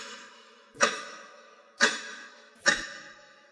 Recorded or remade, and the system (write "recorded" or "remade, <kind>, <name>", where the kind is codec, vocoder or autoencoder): remade, autoencoder, DAC-VAE